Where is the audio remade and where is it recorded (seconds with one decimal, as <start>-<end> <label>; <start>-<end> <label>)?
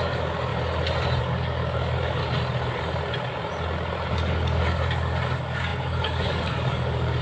0.0-0.5 remade; 0.5-1.2 recorded; 1.2-2.2 remade; 2.2-4.1 recorded; 4.1-7.2 remade